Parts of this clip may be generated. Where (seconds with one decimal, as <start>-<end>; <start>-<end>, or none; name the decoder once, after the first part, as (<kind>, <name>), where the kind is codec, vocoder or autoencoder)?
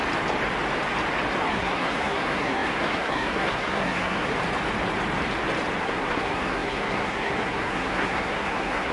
1.5-4.3 (codec, SNAC); 5.8-8.9